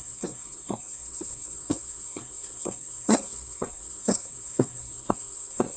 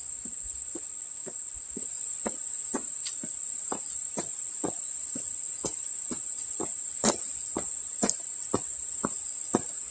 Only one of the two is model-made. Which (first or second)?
first